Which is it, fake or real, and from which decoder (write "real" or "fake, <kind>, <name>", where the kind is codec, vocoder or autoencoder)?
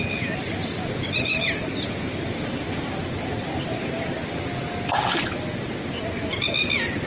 real